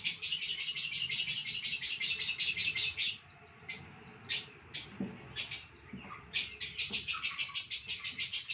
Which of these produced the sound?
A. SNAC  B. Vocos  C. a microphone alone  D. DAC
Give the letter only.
C